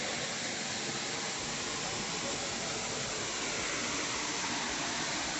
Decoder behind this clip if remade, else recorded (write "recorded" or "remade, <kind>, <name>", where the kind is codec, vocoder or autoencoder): recorded